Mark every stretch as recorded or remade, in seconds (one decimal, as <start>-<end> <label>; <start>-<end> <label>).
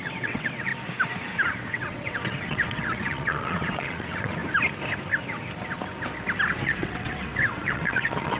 0.0-0.7 remade; 0.7-1.7 recorded; 1.7-4.4 remade; 4.4-6.5 recorded; 6.5-8.4 remade